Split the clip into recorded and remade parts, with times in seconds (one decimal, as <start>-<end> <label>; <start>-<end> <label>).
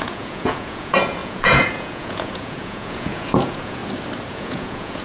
0.0-3.8 remade; 3.8-4.3 recorded; 4.3-5.0 remade